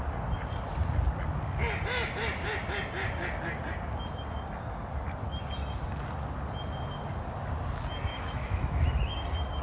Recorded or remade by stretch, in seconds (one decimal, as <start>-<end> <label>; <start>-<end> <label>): 0.0-8.1 recorded; 8.1-9.1 remade; 9.1-9.6 recorded